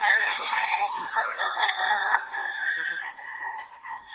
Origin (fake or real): fake